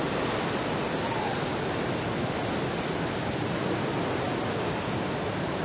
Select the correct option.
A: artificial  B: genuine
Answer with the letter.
B